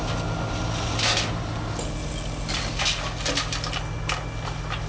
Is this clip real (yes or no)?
yes